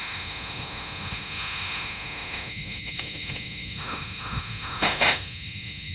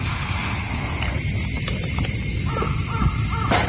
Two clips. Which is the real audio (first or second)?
second